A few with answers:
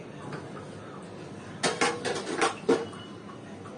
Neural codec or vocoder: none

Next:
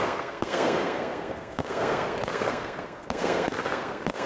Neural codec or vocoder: codec, SNAC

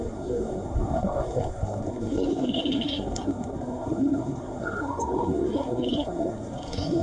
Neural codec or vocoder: codec, SNAC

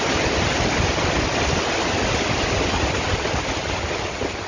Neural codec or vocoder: none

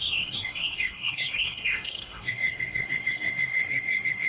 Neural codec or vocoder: codec, SNAC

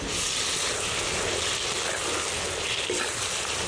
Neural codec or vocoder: none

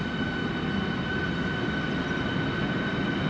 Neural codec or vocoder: none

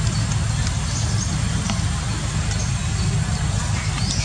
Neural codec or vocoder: none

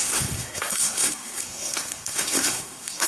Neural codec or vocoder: codec, SNAC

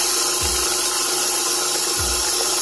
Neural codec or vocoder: none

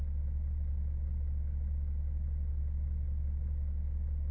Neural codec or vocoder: none